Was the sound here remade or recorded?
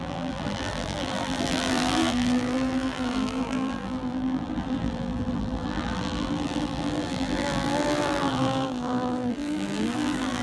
remade